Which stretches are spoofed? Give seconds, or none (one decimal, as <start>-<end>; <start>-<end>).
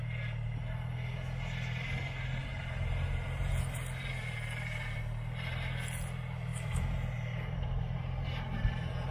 2.4-5.0; 6.5-9.1